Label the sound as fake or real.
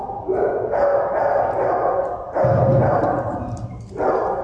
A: real